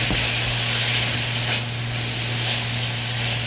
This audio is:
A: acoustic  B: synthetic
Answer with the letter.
A